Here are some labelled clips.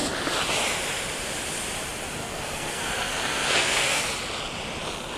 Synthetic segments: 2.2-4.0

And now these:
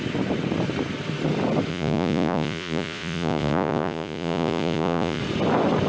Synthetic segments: 1.7-5.2

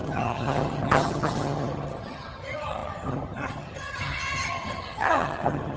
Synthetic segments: 0.0-5.8

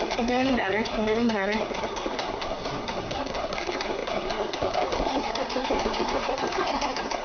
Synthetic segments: 0.0-7.2

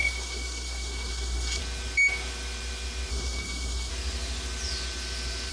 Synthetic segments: 0.0-1.6; 3.1-3.9

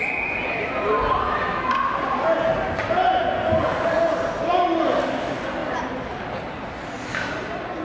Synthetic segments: none